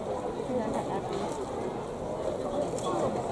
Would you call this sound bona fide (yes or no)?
yes